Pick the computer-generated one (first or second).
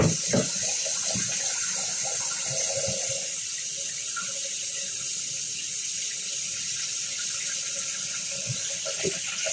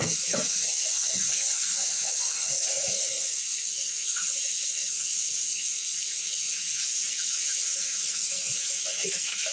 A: second